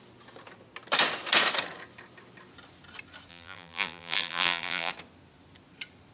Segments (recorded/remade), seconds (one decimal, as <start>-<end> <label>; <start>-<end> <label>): 0.0-3.3 recorded; 3.3-4.9 remade; 4.9-6.1 recorded

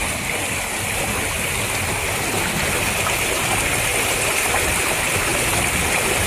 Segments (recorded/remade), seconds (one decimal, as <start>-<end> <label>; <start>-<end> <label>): 0.0-3.9 recorded; 3.9-4.5 remade; 4.5-5.3 recorded; 5.3-6.3 remade

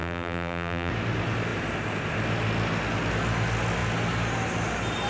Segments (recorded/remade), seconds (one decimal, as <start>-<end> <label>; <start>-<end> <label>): 0.0-0.9 remade; 0.9-5.1 recorded